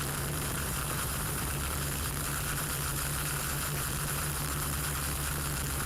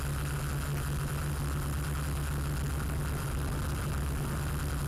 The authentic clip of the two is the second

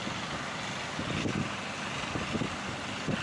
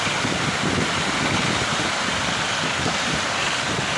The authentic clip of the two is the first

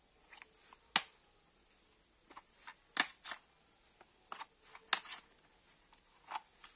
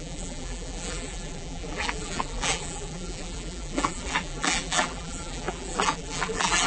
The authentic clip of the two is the first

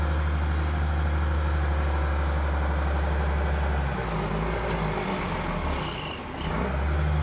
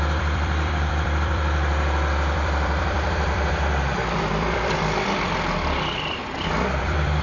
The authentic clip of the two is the first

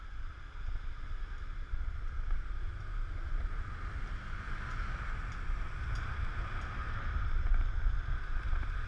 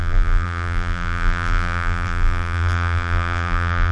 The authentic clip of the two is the first